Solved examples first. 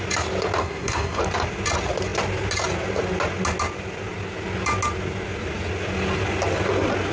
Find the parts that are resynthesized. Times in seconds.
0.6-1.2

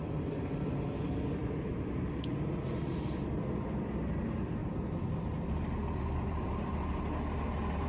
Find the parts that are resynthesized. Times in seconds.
1.4-2.1; 4.6-6.7